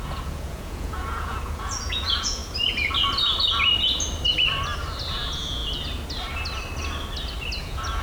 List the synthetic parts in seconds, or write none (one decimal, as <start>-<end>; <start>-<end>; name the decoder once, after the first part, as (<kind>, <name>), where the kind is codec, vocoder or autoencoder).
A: 0.0-2.4 (vocoder, Vocos); 5.1-5.6; 7.6-8.0